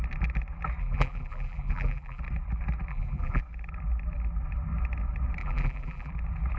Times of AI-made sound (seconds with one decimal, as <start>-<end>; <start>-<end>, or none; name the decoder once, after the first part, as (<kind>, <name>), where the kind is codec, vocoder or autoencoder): 0.8-2.2 (vocoder, BigVGAN v2); 2.9-3.4; 5.4-6.1